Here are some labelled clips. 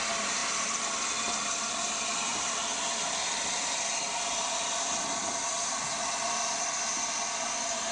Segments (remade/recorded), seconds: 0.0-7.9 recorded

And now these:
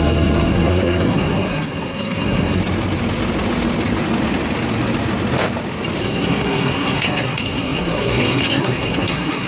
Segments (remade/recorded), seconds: 0.0-2.6 remade; 2.6-6.0 recorded; 6.0-9.5 remade

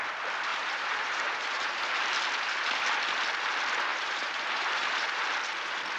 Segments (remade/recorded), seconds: 0.0-0.5 recorded; 0.5-2.0 remade; 2.0-3.9 recorded; 3.9-5.2 remade; 5.2-6.0 recorded

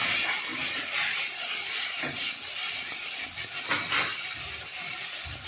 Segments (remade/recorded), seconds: 0.0-5.5 recorded

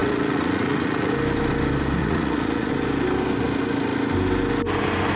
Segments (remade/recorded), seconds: 0.0-1.1 remade; 1.1-2.0 recorded; 2.0-2.7 remade; 2.7-5.2 recorded

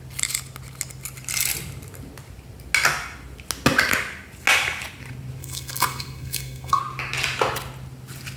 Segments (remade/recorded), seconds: 0.0-5.4 recorded; 5.4-6.8 remade; 6.8-8.4 recorded

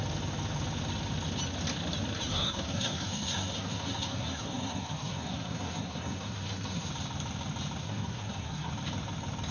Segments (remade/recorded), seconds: 0.0-2.3 recorded; 2.3-6.9 remade; 6.9-7.8 recorded; 7.8-8.7 remade; 8.7-9.5 recorded